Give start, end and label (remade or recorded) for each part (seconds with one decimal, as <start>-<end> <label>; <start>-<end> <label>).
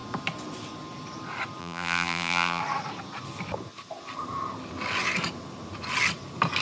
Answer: 0.0-1.6 recorded; 1.6-2.6 remade; 2.6-6.6 recorded